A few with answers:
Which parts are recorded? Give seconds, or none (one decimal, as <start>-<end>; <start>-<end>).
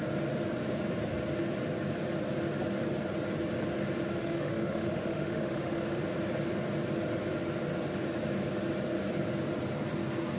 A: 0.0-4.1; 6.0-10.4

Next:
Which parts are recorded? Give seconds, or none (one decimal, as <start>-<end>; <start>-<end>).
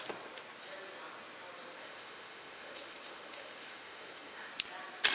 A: 0.0-1.8; 4.5-5.1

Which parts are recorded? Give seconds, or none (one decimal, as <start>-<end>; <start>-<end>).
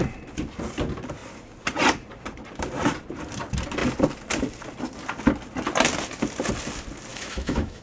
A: 0.0-7.1